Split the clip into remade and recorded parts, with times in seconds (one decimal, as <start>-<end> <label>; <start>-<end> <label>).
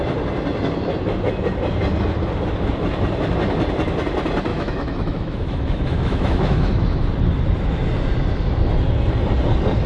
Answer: 0.0-4.5 recorded; 4.5-7.0 remade; 7.0-9.9 recorded